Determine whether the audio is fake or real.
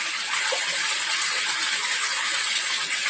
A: real